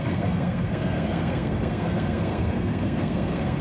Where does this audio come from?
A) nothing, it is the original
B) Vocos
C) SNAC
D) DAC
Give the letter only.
C